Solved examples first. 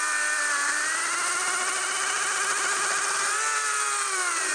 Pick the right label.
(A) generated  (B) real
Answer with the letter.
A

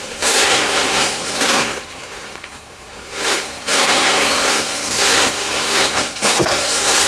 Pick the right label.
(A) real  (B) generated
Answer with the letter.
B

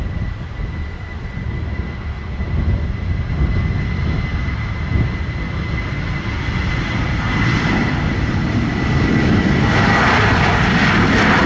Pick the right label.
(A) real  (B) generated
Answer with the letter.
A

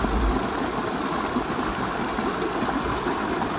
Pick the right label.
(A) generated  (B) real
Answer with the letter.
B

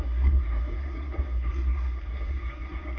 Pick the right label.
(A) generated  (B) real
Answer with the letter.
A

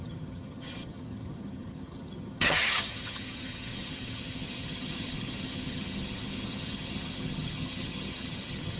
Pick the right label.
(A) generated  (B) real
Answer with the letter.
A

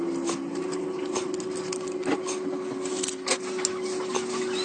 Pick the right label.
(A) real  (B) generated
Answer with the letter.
A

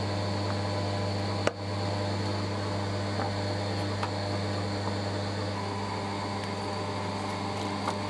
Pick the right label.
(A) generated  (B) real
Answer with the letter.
B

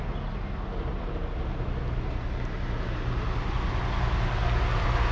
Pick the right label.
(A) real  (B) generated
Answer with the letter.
A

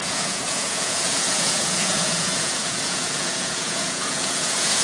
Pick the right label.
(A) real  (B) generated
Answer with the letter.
B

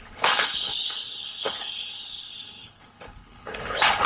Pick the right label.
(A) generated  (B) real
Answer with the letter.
A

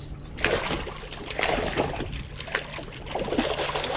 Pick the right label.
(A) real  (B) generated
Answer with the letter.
A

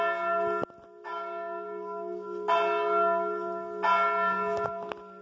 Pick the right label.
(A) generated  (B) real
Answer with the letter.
B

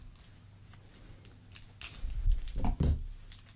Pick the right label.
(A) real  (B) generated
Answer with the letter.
A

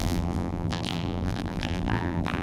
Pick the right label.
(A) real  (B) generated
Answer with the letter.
B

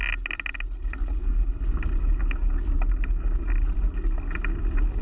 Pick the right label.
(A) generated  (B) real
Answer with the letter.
B